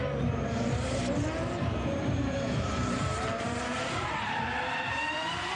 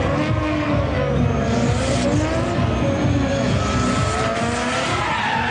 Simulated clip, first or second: first